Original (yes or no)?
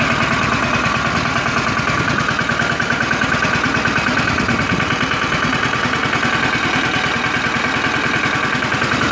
yes